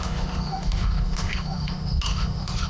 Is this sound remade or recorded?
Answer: remade